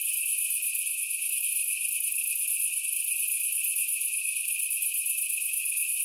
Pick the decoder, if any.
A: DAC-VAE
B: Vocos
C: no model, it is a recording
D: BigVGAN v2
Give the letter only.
C